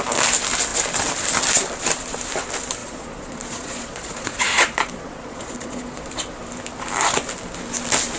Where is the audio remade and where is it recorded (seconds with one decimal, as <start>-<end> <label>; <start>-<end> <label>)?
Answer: 0.0-2.8 recorded; 2.8-6.1 remade; 6.1-8.2 recorded